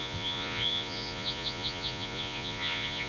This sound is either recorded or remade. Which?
remade